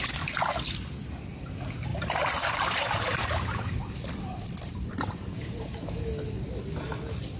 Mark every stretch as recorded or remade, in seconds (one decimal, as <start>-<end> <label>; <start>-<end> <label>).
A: 0.0-1.9 recorded; 1.9-6.0 remade; 6.0-7.4 recorded